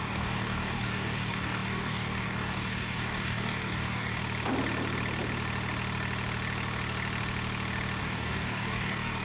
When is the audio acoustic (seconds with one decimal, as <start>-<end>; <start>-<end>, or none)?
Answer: 4.2-8.0